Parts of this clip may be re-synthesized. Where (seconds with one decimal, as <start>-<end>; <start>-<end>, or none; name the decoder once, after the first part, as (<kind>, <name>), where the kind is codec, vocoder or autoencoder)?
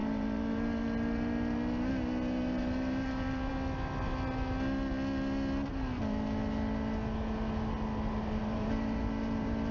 0.0-3.5 (vocoder, BigVGAN v2); 8.4-9.7